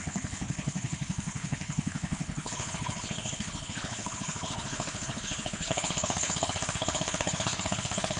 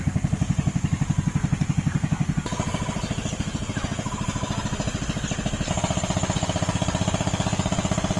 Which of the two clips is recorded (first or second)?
second